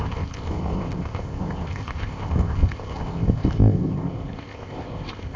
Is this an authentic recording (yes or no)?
no